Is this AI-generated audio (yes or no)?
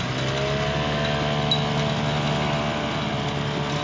no